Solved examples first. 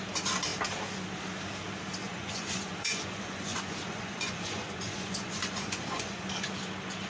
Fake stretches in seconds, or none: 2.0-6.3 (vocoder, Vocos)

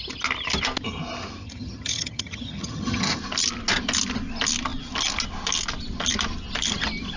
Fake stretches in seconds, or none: 1.4-3.2 (vocoder, HiFi-GAN)

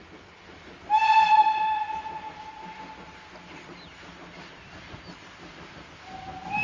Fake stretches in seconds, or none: none

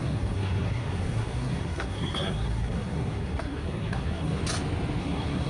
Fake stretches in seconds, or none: 0.0-4.4 (codec, SNAC); 5.0-5.5

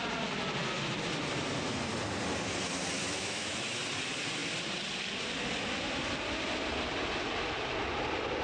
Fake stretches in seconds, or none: 3.0-3.8 (autoencoder, DAC-VAE)

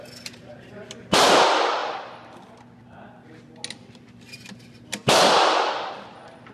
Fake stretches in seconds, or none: 0.0-1.8 (vocoder, BigVGAN v2); 5.7-6.5

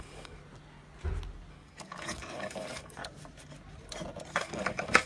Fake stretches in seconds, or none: 0.0-0.4 (codec, DAC); 1.5-3.0; 4.3-5.1

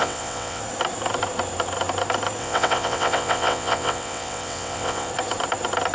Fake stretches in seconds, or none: 0.0-0.6 (vocoder, WaveNeXt); 2.4-5.1